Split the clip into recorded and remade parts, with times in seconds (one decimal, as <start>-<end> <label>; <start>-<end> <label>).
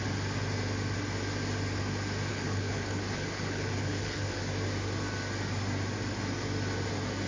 0.0-2.3 recorded; 2.3-4.4 remade; 4.4-7.3 recorded